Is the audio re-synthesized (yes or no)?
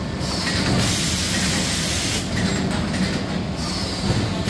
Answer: no